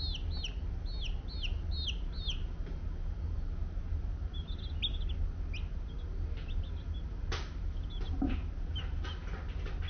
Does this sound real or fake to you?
real